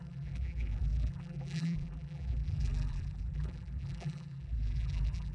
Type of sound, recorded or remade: remade